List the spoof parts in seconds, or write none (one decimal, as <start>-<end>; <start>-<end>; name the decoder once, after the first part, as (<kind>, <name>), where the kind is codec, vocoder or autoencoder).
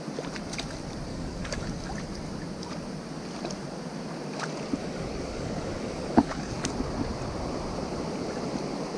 1.1-1.9 (codec, DAC); 4.8-6.7